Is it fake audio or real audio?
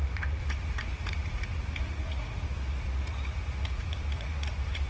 fake